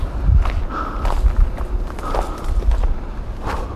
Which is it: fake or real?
real